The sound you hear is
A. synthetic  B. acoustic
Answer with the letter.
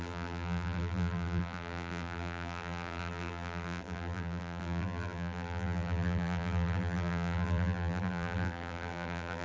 A